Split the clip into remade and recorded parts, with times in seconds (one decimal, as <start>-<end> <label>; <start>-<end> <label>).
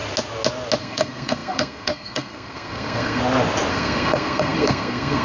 0.0-0.8 recorded; 0.8-3.2 remade; 3.2-3.7 recorded; 3.7-5.2 remade